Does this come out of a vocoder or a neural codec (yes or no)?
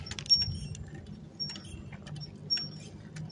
no